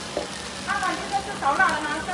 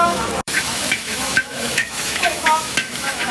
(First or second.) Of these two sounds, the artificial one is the second